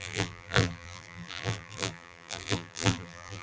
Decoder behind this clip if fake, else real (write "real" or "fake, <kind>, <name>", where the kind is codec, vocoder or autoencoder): fake, vocoder, BigVGAN v2